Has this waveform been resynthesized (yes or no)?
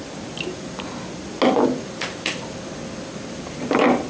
no